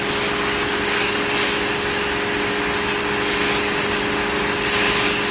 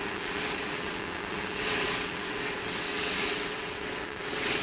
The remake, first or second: second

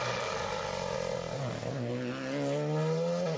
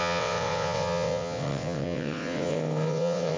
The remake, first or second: second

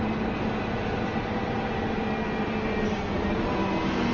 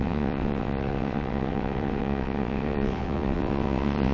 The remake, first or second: second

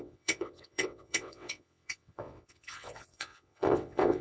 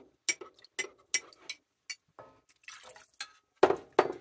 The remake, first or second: first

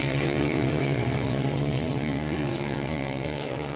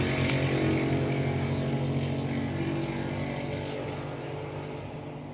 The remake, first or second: first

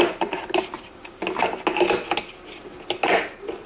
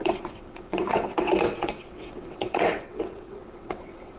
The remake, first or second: second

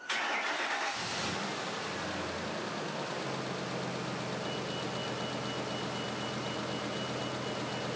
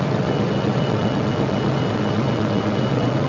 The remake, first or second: second